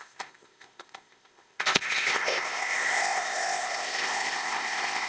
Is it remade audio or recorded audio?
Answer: remade